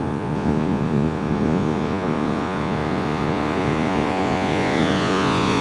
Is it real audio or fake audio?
fake